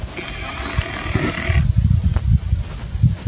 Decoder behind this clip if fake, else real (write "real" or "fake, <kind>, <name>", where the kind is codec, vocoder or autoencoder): real